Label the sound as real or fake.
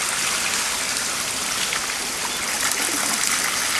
real